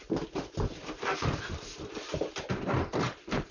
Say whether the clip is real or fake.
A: fake